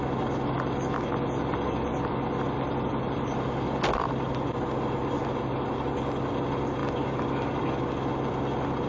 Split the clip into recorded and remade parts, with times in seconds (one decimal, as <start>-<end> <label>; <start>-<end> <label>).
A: 0.0-8.9 recorded